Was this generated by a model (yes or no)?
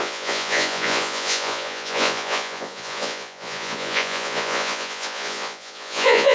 yes